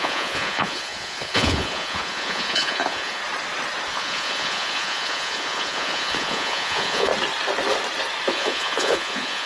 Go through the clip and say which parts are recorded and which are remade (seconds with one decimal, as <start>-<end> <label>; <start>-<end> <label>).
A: 0.0-3.2 remade; 3.2-3.9 recorded; 3.9-7.1 remade; 7.1-8.3 recorded; 8.3-9.5 remade